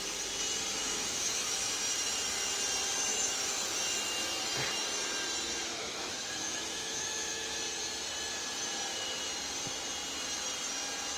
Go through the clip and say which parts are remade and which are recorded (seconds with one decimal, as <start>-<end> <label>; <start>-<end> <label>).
0.0-0.8 recorded; 0.8-1.7 remade; 1.7-3.1 recorded; 3.1-3.8 remade; 3.8-5.8 recorded; 5.8-7.6 remade; 7.6-11.2 recorded